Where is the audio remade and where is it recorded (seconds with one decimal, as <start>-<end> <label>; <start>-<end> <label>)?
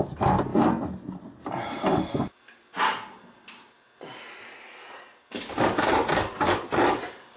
0.0-7.4 recorded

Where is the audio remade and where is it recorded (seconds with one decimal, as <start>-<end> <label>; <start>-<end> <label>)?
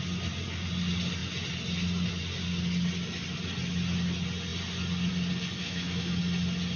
0.0-5.6 recorded; 5.6-6.2 remade; 6.2-6.8 recorded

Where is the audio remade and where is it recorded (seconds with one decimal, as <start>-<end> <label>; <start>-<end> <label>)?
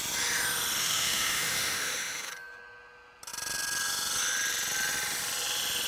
0.0-0.8 recorded; 0.8-2.3 remade; 2.3-5.9 recorded